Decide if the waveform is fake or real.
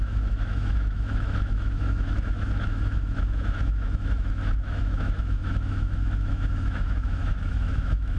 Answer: fake